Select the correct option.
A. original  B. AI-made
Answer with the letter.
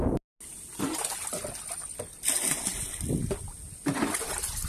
A